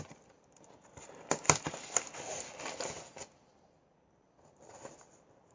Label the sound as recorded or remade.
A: recorded